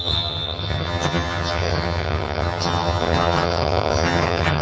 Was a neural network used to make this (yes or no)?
yes